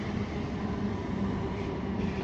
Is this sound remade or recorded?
recorded